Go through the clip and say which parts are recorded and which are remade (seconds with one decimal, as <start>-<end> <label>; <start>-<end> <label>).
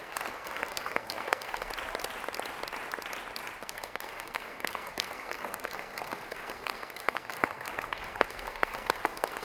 0.0-1.7 remade; 1.7-3.6 recorded; 3.6-9.4 remade